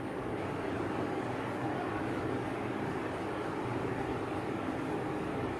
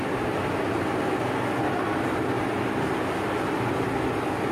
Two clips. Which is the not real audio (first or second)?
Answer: first